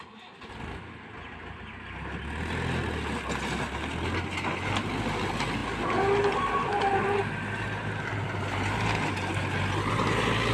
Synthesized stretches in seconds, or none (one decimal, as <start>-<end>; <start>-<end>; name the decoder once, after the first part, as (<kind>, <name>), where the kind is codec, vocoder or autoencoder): none